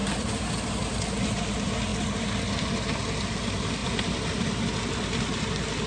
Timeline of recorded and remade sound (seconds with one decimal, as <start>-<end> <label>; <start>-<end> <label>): 0.0-1.1 remade; 1.1-3.8 recorded; 3.8-4.4 remade; 4.4-5.9 recorded